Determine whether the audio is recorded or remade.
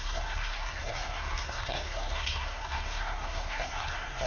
remade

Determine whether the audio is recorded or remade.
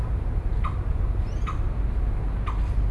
recorded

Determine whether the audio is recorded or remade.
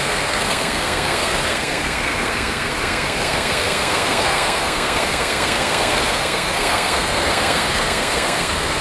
remade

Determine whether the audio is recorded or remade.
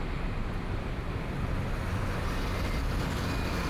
recorded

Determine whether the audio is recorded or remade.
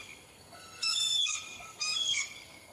remade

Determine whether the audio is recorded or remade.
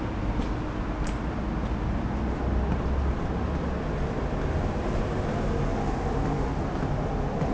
recorded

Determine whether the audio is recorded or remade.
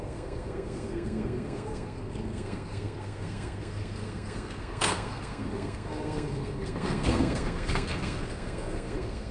remade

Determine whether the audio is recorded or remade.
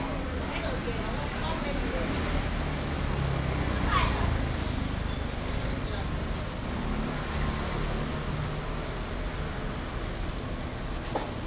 recorded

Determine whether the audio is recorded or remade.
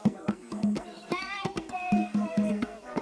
remade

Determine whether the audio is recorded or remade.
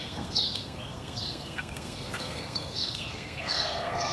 remade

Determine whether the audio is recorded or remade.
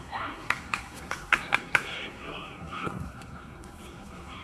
remade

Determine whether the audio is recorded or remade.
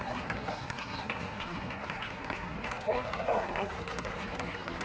remade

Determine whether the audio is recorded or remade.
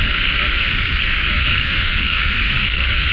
remade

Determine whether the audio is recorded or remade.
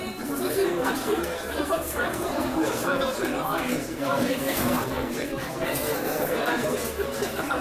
remade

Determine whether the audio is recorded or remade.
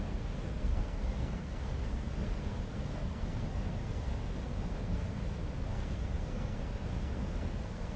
remade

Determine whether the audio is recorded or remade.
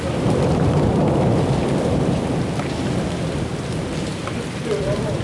recorded